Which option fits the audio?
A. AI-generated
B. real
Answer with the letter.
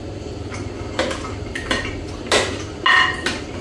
B